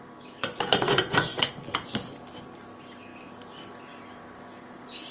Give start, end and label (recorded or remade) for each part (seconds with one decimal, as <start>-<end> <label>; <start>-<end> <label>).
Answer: 0.0-0.4 recorded; 0.4-1.5 remade; 1.5-5.1 recorded